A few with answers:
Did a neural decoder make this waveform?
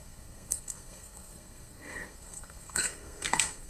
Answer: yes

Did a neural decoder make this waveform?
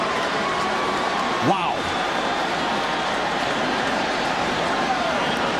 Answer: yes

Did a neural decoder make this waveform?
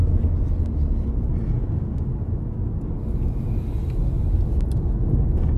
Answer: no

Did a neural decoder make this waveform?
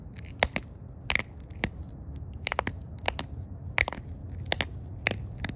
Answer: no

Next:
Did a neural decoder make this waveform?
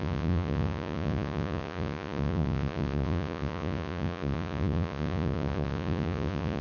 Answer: yes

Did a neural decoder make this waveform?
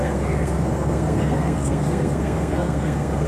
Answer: yes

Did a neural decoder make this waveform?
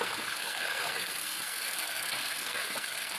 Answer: yes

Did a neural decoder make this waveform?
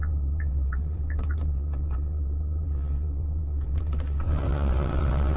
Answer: yes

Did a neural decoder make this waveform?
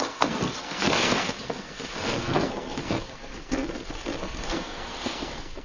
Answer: yes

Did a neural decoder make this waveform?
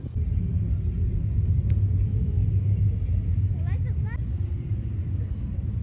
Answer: no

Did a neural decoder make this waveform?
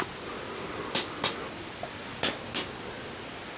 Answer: no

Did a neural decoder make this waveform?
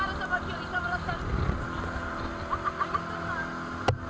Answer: no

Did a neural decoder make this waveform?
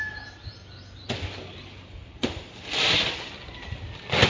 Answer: no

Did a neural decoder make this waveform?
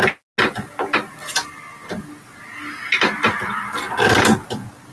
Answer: no